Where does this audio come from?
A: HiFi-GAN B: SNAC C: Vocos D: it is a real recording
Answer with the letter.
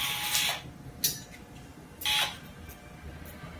D